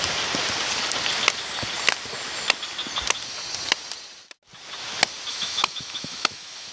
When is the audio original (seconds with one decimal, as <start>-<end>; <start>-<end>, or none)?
0.0-5.3